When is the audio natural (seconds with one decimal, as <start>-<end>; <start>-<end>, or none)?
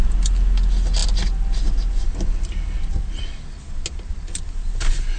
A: 0.0-5.2